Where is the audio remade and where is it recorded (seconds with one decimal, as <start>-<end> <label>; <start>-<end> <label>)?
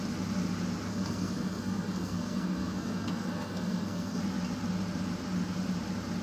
0.0-0.9 recorded; 0.9-4.2 remade; 4.2-6.2 recorded